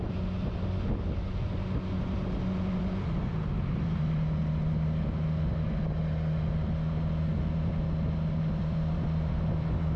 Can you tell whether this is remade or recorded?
recorded